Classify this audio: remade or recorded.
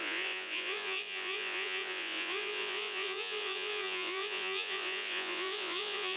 remade